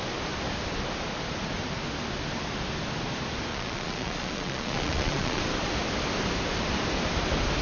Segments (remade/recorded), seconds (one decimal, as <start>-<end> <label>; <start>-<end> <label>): 0.0-3.5 recorded; 3.5-5.4 remade; 5.4-7.6 recorded